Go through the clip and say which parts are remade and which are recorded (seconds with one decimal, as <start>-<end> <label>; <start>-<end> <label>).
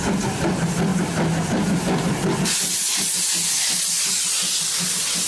0.0-5.3 recorded